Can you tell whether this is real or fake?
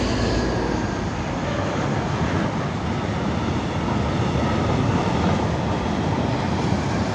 real